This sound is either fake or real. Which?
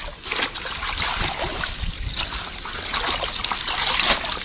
real